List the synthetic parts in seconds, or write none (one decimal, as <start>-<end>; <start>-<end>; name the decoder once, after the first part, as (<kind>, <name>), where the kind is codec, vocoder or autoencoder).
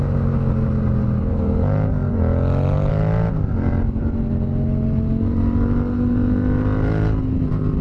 none